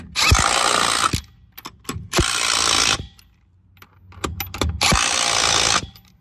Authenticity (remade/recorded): recorded